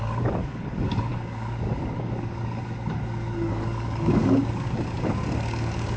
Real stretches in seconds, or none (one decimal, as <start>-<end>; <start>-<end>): none